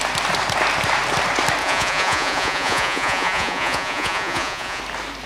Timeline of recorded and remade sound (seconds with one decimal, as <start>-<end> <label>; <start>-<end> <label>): 0.0-1.6 recorded; 1.6-4.8 remade; 4.8-5.3 recorded